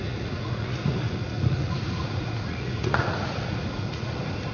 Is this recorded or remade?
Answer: remade